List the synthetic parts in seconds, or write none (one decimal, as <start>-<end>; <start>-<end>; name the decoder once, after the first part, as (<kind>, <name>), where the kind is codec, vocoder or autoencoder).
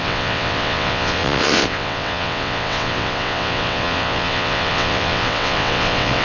0.0-6.2 (vocoder, WaveNeXt)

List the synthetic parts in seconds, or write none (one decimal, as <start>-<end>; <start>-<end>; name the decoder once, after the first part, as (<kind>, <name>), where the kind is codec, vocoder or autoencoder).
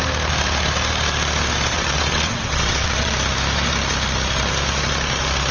1.7-3.1 (vocoder, WaveNeXt)